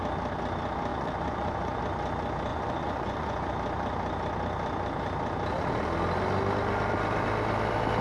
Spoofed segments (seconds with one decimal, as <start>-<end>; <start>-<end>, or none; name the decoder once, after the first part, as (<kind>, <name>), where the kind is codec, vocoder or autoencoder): 0.9-1.8 (vocoder, Vocos); 2.5-3.5